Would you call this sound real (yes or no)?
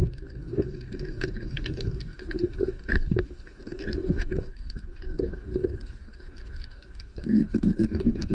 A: no